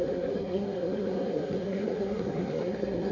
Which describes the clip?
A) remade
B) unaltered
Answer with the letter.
A